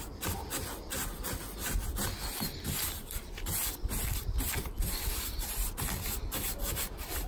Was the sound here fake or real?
real